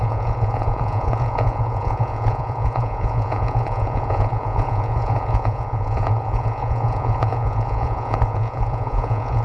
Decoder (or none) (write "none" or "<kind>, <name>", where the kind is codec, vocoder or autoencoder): vocoder, Vocos